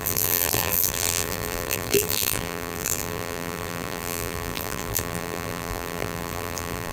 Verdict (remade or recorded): remade